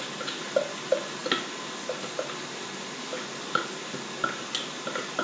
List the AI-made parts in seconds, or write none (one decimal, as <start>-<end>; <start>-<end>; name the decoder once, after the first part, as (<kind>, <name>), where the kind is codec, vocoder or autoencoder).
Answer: none